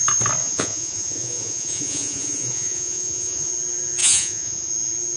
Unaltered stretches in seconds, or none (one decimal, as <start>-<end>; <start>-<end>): 0.0-0.4; 3.5-4.0; 4.7-5.2